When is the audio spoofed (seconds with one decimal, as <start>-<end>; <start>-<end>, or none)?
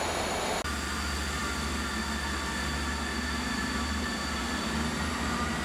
3.6-5.6